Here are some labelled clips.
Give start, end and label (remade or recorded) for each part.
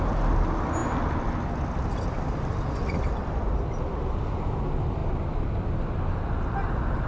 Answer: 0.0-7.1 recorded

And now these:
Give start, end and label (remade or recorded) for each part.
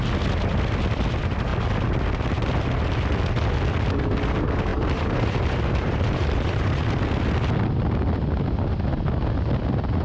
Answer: 0.0-4.7 recorded; 4.7-6.7 remade; 6.7-10.0 recorded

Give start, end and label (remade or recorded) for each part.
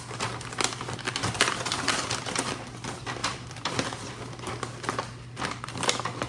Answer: 0.0-3.2 recorded; 3.2-4.1 remade; 4.1-6.3 recorded